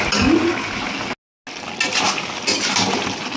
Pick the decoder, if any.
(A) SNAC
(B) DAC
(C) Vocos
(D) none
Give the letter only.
D